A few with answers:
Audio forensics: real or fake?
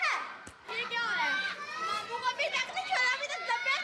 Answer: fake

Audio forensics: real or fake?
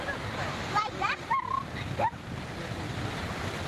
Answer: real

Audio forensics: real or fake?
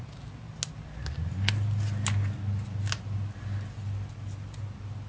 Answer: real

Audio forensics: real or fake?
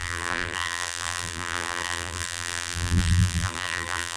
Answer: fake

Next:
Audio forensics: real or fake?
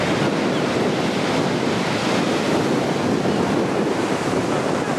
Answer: real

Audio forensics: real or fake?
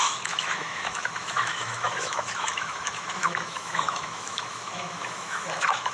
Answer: fake